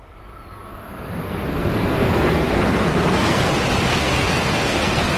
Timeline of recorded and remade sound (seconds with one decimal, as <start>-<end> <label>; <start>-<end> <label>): 0.0-0.7 recorded; 0.7-3.5 remade; 3.5-3.9 recorded; 3.9-5.2 remade